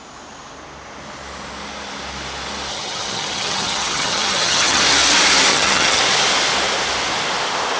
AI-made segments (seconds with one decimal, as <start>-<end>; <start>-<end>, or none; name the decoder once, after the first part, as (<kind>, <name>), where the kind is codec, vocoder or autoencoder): 2.7-4.8 (vocoder, HiFi-GAN); 5.5-6.0